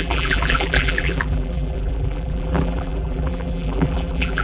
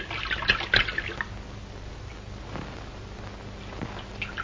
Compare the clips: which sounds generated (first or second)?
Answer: first